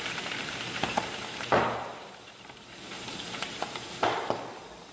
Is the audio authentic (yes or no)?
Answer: no